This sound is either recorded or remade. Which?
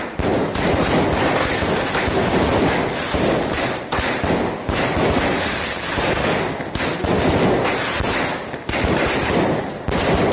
recorded